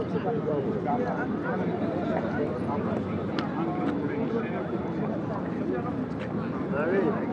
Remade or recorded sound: remade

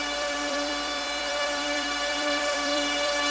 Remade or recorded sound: remade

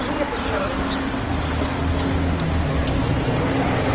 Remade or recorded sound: recorded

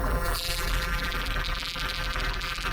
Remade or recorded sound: remade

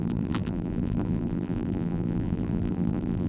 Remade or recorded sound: remade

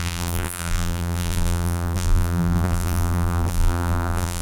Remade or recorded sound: remade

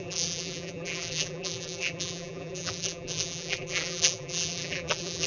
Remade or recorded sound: remade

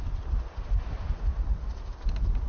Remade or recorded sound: recorded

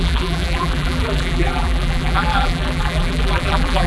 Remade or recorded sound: remade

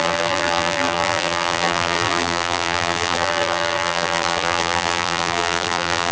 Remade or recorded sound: remade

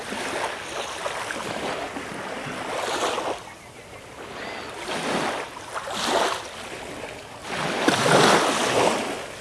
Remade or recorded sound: recorded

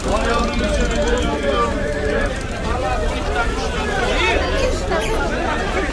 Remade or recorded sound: recorded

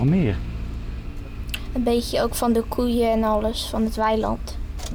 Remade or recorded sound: recorded